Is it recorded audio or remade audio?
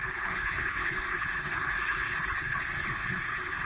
remade